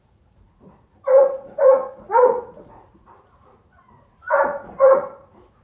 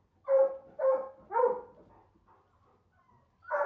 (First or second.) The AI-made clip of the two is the first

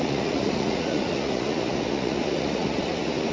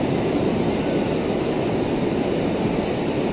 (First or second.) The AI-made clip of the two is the first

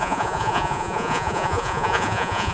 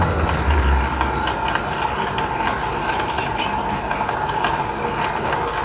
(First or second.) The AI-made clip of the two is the first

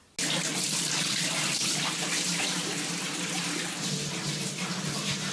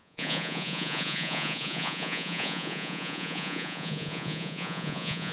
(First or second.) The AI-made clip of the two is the second